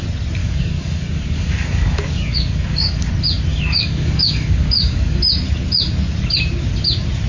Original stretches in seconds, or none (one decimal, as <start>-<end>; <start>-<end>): 0.0-0.4; 3.0-3.5; 5.2-7.3